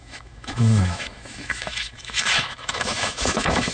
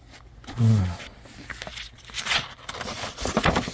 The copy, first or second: first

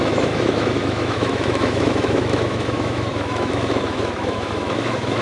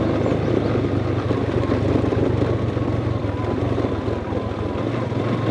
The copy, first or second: first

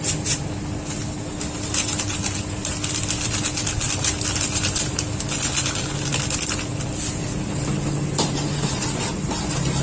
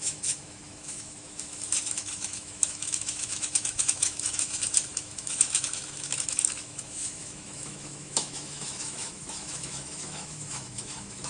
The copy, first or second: second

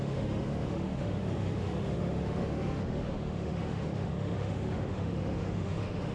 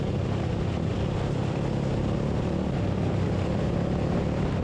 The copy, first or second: first